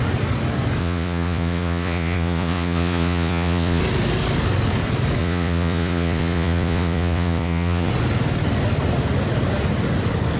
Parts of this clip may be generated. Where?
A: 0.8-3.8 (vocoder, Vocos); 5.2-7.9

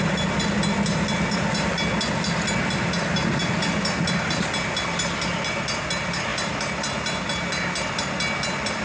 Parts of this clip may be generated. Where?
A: none

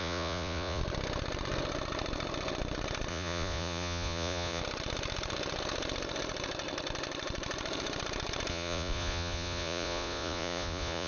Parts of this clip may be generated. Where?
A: 0.0-0.8 (vocoder, Vocos); 3.1-4.6; 8.5-11.1

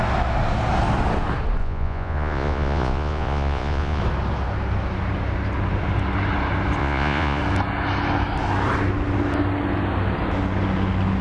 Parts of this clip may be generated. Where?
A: 1.6-4.0 (vocoder, Vocos); 6.8-7.4

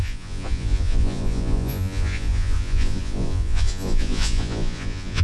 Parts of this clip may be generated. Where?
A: 0.0-5.2 (vocoder, Vocos)